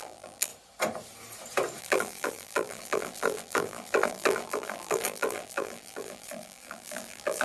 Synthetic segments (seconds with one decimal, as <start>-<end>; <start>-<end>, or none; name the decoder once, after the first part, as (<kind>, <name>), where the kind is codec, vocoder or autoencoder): 0.0-0.5 (vocoder, BigVGAN v2); 1.8-7.4